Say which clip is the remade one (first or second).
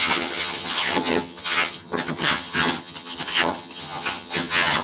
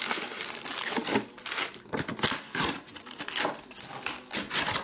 first